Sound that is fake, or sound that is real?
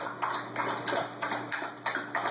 real